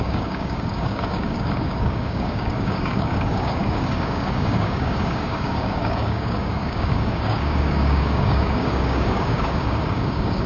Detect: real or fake fake